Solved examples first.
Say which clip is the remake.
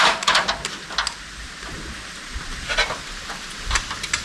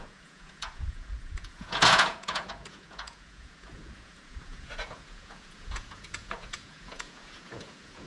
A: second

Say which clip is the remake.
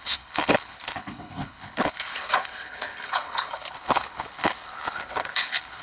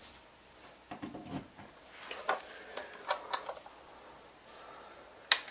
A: first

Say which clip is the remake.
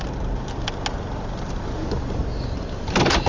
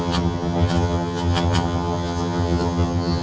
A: second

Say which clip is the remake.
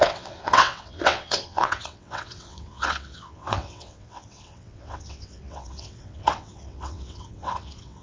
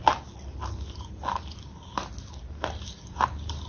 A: first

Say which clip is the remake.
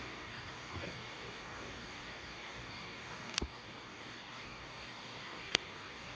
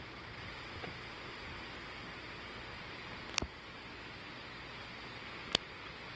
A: first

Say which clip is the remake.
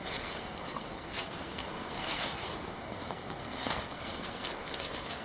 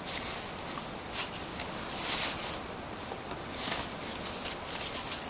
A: first